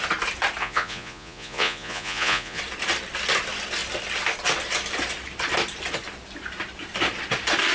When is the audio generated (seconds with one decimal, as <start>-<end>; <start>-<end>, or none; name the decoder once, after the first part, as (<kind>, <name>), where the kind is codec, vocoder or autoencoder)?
0.6-2.6 (vocoder, Vocos)